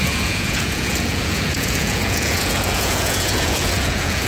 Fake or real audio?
fake